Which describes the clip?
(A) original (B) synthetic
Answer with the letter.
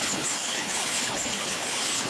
B